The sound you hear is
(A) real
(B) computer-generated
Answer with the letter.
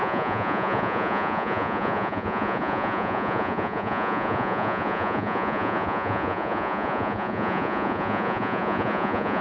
B